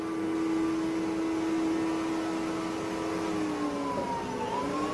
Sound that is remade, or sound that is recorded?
recorded